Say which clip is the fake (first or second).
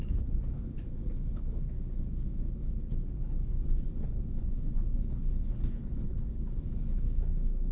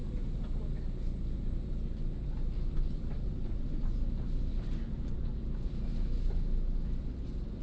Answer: first